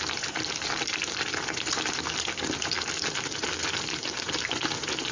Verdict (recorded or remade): recorded